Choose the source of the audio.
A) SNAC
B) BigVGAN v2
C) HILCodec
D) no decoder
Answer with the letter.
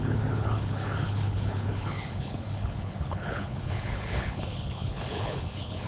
C